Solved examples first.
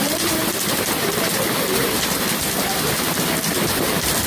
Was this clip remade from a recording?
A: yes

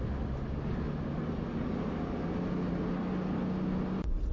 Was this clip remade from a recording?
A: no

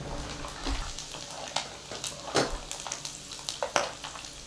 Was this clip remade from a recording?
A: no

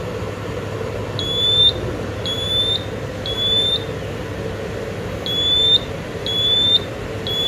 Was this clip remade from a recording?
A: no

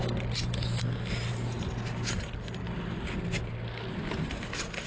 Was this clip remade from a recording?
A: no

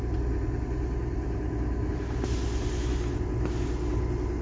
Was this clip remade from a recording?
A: no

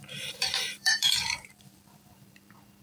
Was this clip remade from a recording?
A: yes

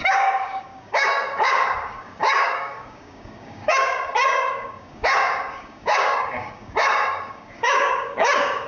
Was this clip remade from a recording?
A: yes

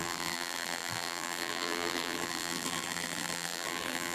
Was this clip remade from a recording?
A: yes